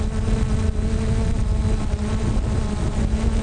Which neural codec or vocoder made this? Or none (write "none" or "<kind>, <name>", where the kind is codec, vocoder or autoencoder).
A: none